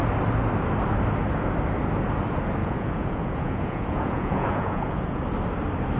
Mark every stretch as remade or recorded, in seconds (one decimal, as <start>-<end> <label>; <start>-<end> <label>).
0.0-2.6 recorded; 2.6-5.2 remade; 5.2-6.0 recorded